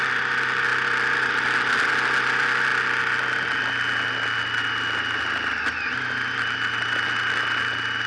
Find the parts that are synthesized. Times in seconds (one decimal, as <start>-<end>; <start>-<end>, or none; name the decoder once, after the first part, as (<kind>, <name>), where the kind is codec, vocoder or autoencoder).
none